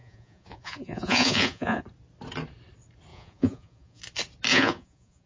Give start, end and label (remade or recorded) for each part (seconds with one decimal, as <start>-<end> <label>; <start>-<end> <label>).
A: 0.0-1.8 remade; 1.8-3.1 recorded; 3.1-4.0 remade; 4.0-4.5 recorded; 4.5-5.3 remade